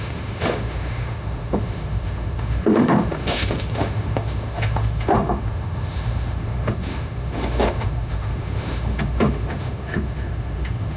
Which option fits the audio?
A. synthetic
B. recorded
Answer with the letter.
A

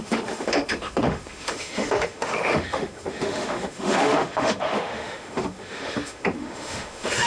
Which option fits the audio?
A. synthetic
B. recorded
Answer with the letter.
A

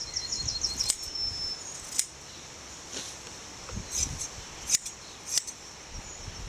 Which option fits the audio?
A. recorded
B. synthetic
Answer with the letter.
A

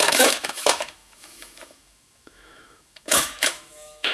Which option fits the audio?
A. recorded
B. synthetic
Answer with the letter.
B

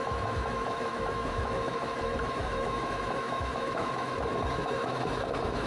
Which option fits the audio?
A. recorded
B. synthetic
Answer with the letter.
B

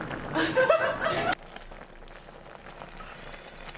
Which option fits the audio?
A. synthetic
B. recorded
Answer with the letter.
B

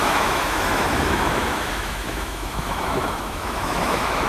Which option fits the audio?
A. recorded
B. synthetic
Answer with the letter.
B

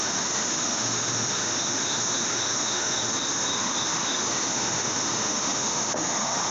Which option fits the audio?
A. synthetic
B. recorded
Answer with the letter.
A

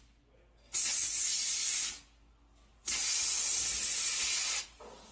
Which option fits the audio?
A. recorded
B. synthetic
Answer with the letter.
A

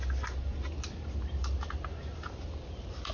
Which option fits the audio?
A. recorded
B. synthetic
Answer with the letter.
A